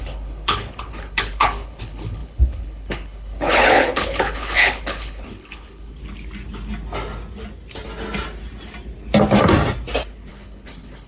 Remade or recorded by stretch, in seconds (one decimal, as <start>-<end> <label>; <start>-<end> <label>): 0.0-6.0 remade; 6.0-10.3 recorded; 10.3-11.1 remade

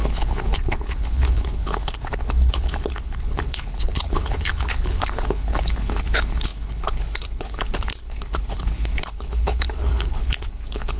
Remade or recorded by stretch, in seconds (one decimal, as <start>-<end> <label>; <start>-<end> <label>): 0.0-11.0 remade

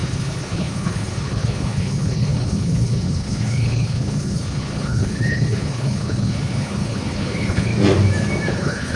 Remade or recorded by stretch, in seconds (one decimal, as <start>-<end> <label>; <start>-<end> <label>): 0.0-7.7 remade; 7.7-8.5 recorded; 8.5-9.0 remade

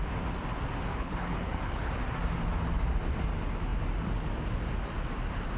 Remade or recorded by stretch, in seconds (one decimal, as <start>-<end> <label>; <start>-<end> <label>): 0.0-0.9 recorded; 0.9-1.9 remade; 1.9-5.6 recorded

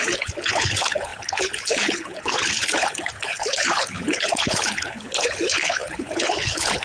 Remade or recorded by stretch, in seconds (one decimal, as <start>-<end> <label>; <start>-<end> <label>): 0.0-6.8 remade